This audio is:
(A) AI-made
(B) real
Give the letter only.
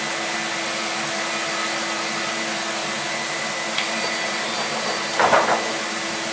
B